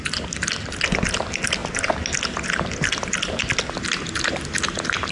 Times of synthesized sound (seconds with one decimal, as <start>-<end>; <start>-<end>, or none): none